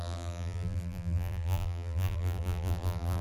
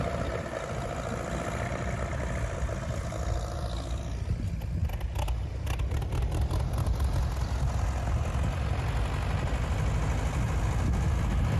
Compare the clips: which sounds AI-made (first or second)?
first